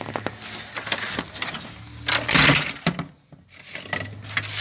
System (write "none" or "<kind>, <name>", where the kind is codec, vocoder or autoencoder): none